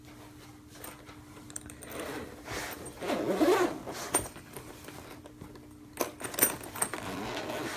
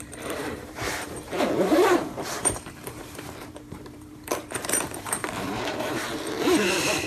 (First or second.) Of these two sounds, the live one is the first